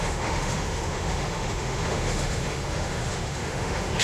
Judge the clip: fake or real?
fake